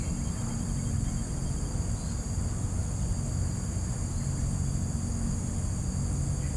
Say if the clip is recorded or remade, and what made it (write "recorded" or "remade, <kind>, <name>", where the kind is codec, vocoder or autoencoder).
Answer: recorded